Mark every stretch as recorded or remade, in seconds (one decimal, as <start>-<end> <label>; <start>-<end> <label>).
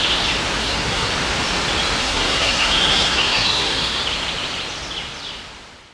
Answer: 0.0-0.6 recorded; 0.6-1.1 remade; 1.1-2.0 recorded; 2.0-4.0 remade; 4.0-5.9 recorded